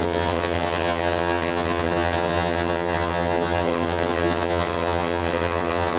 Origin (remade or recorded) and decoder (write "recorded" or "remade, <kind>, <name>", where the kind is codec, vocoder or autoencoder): remade, vocoder, HiFi-GAN